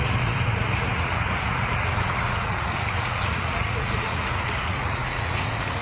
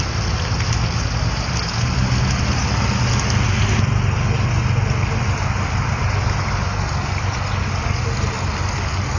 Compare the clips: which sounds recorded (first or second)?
second